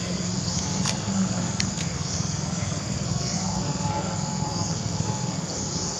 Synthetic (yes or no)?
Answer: yes